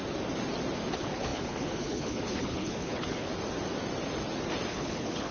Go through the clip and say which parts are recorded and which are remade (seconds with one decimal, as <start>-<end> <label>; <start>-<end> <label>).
0.0-0.9 recorded; 0.9-3.3 remade; 3.3-4.7 recorded; 4.7-5.3 remade